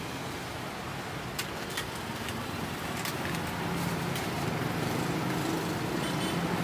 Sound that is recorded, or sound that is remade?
recorded